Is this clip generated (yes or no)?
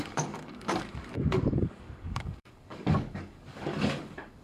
yes